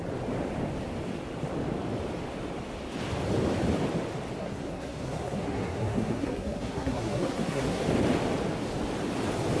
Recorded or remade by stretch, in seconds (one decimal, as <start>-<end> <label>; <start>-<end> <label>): 0.0-4.4 recorded; 4.4-7.8 remade; 7.8-9.6 recorded